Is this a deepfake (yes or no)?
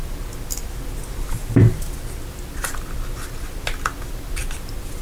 no